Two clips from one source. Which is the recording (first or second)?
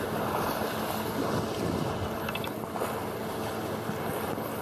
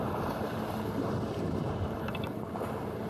first